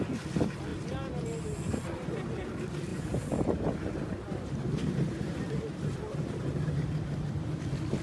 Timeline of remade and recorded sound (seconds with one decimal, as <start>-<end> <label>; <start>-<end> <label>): 0.0-0.7 recorded; 0.7-1.4 remade; 1.4-2.9 recorded; 2.9-7.6 remade; 7.6-8.0 recorded